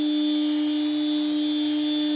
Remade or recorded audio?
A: recorded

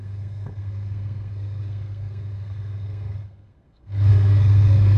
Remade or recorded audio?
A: remade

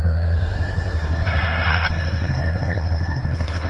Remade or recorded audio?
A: remade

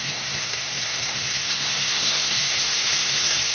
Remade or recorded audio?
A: remade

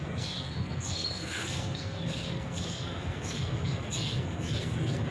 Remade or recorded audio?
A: remade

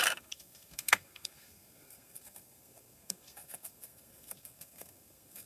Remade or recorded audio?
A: remade